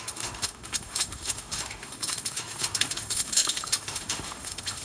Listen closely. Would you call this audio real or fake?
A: fake